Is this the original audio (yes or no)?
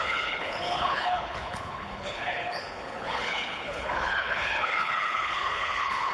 no